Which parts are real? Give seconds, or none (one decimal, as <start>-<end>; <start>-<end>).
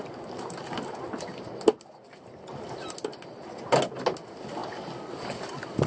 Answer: 0.0-5.9